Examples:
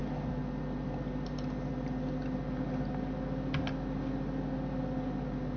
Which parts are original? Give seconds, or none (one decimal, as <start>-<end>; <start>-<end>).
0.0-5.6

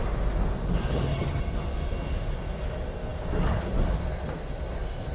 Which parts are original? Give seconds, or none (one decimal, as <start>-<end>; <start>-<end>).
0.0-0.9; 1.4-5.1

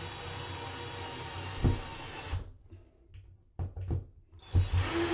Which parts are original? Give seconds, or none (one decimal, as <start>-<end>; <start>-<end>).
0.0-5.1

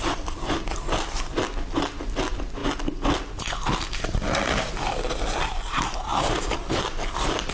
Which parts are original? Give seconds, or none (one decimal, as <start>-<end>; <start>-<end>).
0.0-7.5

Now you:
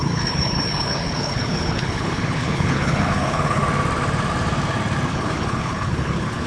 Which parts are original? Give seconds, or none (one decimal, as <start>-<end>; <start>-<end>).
3.6-5.1

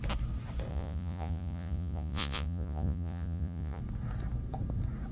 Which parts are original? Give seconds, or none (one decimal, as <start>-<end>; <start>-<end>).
0.0-0.7; 3.8-5.1